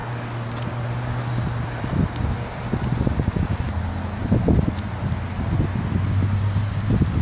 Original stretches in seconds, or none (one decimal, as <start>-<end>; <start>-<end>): 0.0-7.2